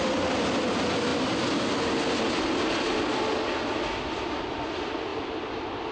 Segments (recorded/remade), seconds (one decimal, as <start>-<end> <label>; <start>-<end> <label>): 0.0-5.9 recorded